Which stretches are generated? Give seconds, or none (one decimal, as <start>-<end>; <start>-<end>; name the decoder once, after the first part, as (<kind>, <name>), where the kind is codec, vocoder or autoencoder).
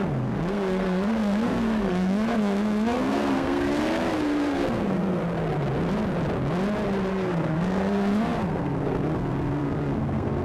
0.0-5.2 (codec, SNAC); 7.1-10.4